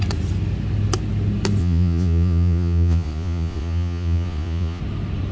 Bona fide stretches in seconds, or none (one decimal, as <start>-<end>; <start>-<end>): 0.0-1.6; 4.8-5.3